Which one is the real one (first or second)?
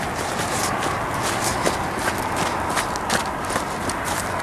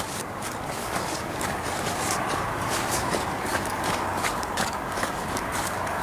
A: first